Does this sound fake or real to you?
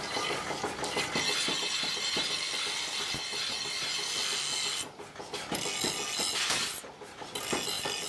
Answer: real